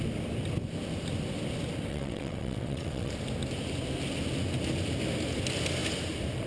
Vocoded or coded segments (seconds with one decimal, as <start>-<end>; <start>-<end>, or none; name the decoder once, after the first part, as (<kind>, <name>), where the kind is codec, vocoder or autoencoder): 1.9-3.1 (vocoder, WaveNeXt)